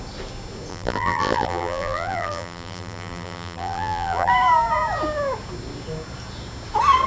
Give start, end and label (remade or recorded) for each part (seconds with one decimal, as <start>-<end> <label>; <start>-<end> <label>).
0.0-0.7 recorded; 0.7-4.3 remade; 4.3-7.1 recorded